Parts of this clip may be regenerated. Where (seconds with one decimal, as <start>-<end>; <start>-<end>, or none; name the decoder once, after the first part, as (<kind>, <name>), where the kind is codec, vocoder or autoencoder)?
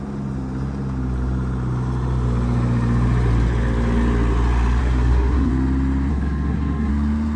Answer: 4.8-5.5 (codec, SNAC); 6.1-6.9